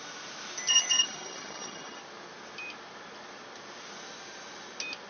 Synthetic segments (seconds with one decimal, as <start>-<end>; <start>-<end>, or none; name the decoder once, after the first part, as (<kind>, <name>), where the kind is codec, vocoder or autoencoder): 0.7-2.0 (vocoder, HiFi-GAN)